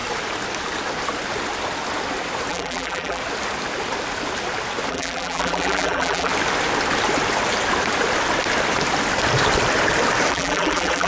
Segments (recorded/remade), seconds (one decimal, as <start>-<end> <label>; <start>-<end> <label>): 0.0-2.5 recorded; 2.5-3.2 remade; 3.2-4.9 recorded; 4.9-6.3 remade; 6.3-10.3 recorded; 10.3-11.1 remade